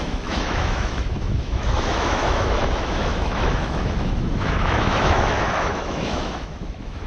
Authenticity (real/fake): fake